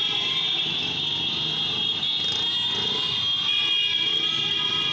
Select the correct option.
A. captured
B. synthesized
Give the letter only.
A